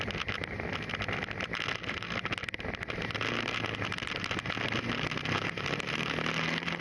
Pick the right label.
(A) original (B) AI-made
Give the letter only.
A